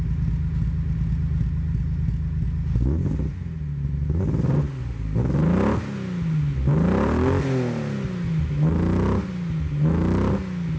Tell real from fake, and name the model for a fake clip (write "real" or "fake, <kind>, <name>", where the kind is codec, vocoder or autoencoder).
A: real